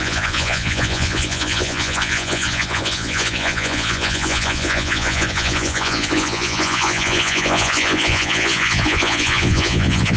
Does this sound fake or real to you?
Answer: fake